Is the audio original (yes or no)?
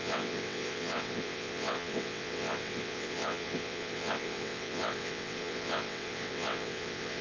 no